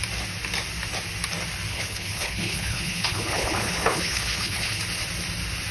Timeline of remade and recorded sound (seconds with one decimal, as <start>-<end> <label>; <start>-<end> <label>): 0.0-1.7 recorded; 1.7-4.8 remade; 4.8-5.7 recorded